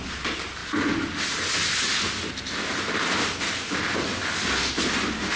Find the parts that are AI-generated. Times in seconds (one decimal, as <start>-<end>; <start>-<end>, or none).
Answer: none